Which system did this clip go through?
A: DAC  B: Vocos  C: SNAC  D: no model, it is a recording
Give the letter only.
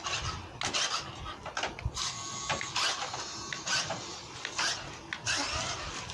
D